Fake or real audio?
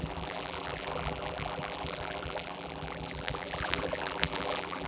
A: fake